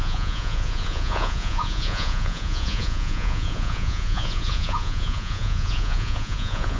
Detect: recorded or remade remade